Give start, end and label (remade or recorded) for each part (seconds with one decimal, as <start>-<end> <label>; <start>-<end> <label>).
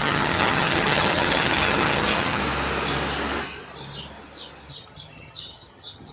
0.0-2.4 remade; 2.4-4.7 recorded; 4.7-6.1 remade